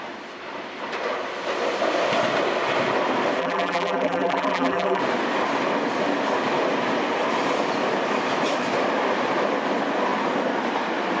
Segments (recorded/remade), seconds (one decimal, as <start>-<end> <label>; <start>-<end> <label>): 0.0-3.4 recorded; 3.4-5.0 remade; 5.0-11.2 recorded